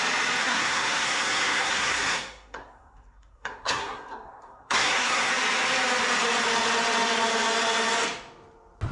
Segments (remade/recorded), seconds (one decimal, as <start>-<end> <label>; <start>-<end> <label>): 0.0-0.4 recorded; 0.4-5.3 remade; 5.3-8.9 recorded